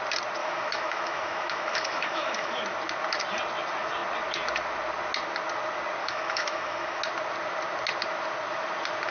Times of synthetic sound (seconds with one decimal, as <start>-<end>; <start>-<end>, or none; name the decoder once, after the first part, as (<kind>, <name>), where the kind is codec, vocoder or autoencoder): 0.4-2.6 (autoencoder, DAC-VAE); 6.0-7.0